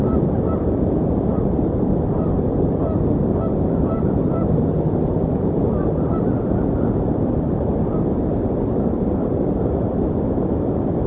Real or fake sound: real